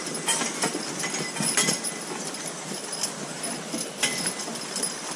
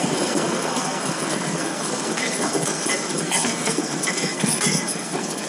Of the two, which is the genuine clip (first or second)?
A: first